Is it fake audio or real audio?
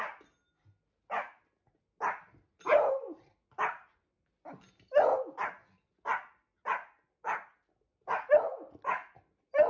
real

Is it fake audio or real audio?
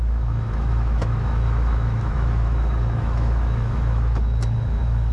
fake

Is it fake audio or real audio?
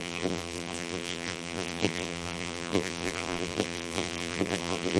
fake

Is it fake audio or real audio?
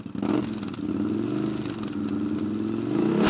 real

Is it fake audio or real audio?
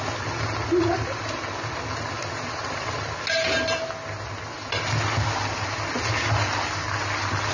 real